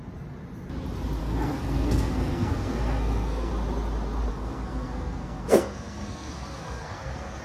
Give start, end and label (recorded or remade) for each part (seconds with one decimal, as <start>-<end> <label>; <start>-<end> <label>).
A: 0.0-1.2 recorded; 1.2-3.5 remade; 3.5-4.3 recorded; 4.3-7.4 remade

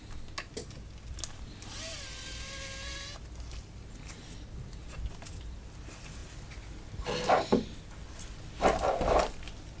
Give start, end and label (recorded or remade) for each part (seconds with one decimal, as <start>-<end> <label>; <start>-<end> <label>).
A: 0.0-9.8 recorded

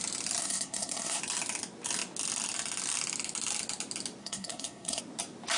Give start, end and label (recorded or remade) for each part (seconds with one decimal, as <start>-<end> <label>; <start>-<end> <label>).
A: 0.0-0.4 recorded; 0.4-1.2 remade; 1.2-4.2 recorded; 4.2-5.0 remade; 5.0-5.6 recorded